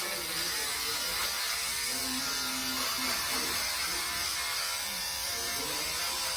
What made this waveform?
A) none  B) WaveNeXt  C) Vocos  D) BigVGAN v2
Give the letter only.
D